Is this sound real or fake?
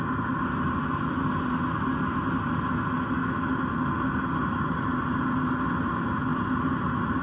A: real